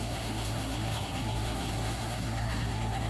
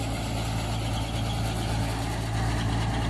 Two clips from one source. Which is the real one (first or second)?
second